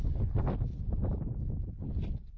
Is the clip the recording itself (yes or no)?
yes